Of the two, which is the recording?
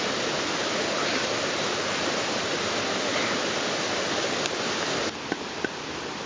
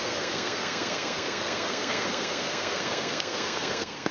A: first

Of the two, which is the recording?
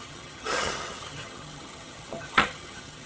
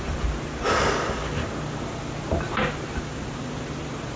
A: second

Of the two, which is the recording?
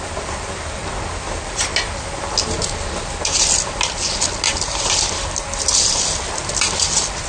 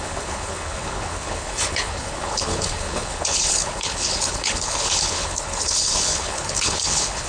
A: first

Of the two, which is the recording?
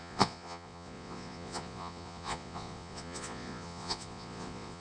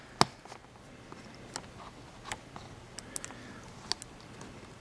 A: second